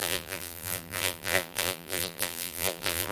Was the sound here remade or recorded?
remade